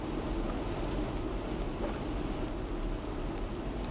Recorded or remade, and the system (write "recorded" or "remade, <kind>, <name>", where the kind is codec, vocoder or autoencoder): recorded